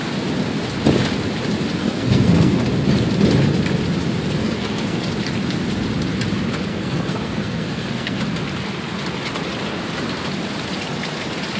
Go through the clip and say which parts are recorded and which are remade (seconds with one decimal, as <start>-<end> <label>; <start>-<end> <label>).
0.0-1.8 recorded; 1.8-2.6 remade; 2.6-4.4 recorded; 4.4-5.1 remade; 5.1-6.7 recorded; 6.7-8.2 remade; 8.2-11.6 recorded